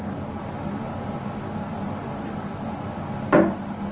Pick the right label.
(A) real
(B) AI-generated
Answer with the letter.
A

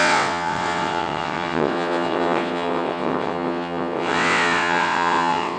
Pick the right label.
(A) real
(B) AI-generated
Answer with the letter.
B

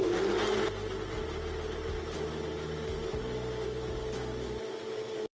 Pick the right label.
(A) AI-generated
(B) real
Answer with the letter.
B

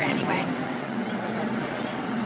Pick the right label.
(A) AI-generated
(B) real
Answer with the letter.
A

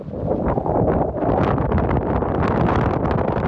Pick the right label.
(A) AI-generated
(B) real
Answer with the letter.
B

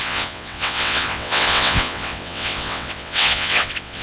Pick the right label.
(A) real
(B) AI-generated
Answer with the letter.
B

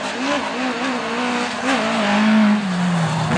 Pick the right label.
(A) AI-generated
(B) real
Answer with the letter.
B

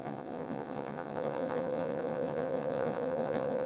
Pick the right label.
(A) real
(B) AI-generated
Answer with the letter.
B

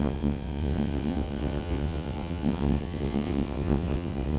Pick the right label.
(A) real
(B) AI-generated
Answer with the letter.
B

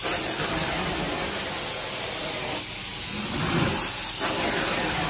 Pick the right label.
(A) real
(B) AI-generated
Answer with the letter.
A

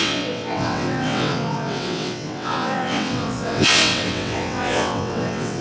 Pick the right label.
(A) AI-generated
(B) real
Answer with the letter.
A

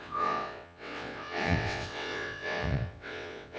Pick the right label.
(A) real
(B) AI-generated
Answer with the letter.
B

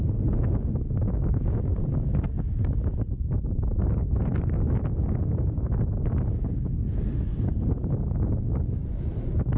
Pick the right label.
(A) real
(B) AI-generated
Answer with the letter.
A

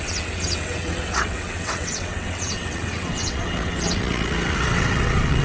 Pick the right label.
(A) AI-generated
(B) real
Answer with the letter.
A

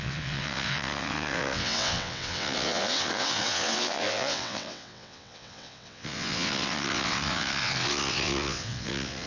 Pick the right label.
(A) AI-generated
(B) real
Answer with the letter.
A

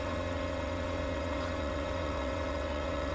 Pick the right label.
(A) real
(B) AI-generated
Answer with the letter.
B